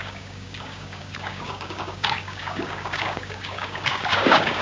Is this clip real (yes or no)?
no